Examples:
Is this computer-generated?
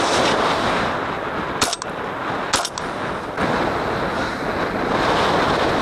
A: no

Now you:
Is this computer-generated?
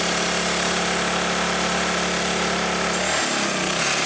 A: no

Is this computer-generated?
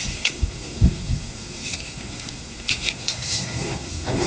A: yes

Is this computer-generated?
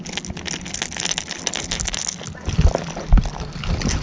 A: no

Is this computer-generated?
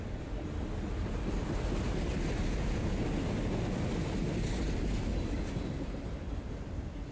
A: no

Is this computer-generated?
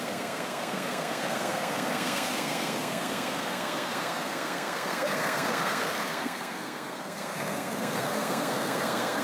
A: yes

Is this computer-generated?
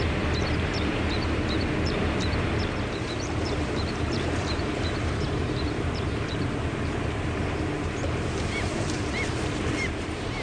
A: yes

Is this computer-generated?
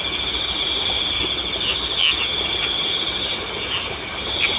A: no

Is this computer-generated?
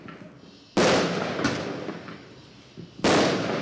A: no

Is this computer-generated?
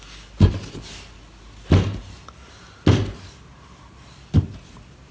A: no